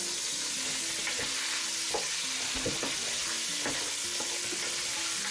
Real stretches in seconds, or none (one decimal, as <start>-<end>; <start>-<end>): 0.0-5.3